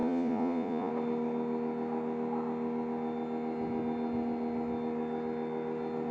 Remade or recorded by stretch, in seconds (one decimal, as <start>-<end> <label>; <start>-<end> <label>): 0.0-0.9 remade; 0.9-6.1 recorded